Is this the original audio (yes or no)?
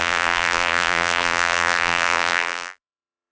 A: no